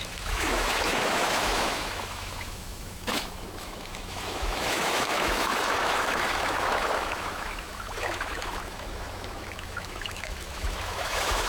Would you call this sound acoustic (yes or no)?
no